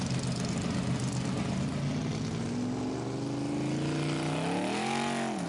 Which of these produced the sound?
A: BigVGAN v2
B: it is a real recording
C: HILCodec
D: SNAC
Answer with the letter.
B